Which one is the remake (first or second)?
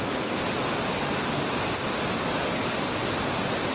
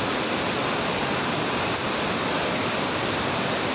second